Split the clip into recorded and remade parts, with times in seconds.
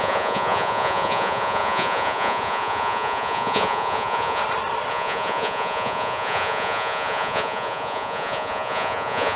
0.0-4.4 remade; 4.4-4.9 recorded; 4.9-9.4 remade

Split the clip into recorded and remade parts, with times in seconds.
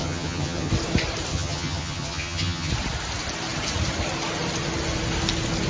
0.0-0.7 remade; 0.7-1.3 recorded; 1.3-2.7 remade; 2.7-5.7 recorded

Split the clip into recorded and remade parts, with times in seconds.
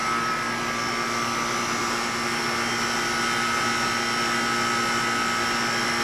0.0-6.0 recorded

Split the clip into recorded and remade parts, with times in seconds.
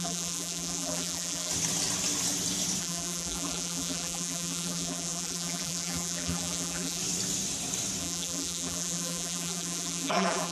0.0-1.5 remade; 1.5-2.8 recorded; 2.8-7.0 remade; 7.0-8.0 recorded; 8.0-10.5 remade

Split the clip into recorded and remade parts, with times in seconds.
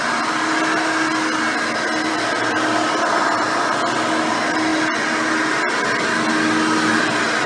0.0-7.5 recorded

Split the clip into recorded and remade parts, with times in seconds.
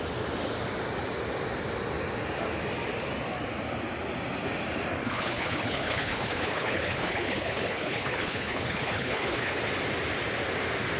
0.0-5.0 recorded; 5.0-9.6 remade; 9.6-11.0 recorded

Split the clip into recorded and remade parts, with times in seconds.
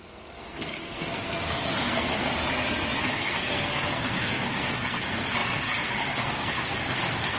0.0-2.3 remade; 2.3-3.0 recorded; 3.0-7.4 remade